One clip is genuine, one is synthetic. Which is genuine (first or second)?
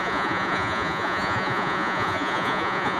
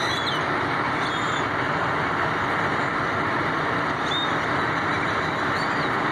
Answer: second